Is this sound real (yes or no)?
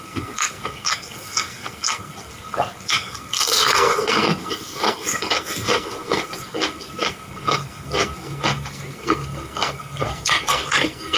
no